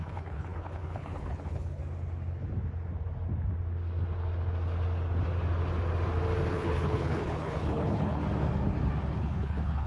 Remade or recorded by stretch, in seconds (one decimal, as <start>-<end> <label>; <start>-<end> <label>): 0.0-1.8 remade; 1.8-6.5 recorded; 6.5-8.2 remade; 8.2-9.1 recorded; 9.1-9.9 remade